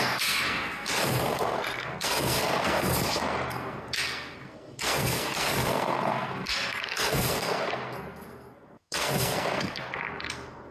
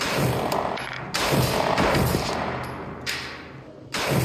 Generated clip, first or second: first